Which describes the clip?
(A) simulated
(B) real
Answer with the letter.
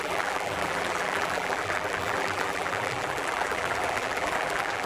A